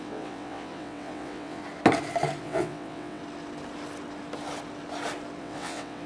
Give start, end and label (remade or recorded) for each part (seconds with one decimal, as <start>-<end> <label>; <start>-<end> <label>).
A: 0.0-1.6 remade; 1.6-2.4 recorded; 2.4-3.2 remade; 3.2-5.4 recorded; 5.4-6.1 remade

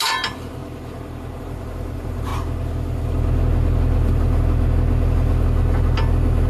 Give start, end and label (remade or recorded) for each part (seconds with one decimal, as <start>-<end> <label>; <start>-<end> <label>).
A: 0.0-0.6 remade; 0.6-1.4 recorded; 1.4-2.3 remade; 2.3-6.5 recorded

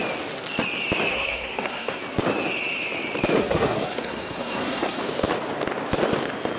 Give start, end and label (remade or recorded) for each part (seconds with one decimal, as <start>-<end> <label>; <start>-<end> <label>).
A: 0.0-1.1 recorded; 1.1-2.0 remade; 2.0-3.4 recorded; 3.4-5.0 remade; 5.0-6.6 recorded